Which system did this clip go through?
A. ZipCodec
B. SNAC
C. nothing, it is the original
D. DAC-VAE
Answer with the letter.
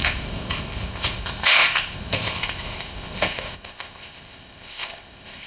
A